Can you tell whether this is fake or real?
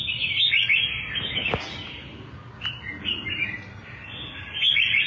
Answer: real